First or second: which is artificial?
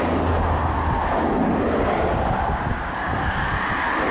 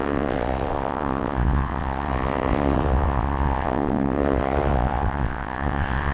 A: second